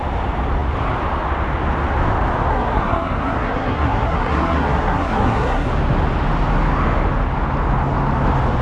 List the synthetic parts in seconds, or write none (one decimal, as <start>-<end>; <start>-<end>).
2.5-5.7